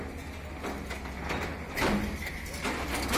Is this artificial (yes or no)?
no